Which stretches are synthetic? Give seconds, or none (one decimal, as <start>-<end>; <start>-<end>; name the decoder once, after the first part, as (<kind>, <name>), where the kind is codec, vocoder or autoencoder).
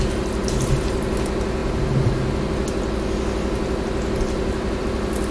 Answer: none